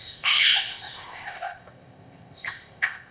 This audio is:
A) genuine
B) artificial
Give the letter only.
B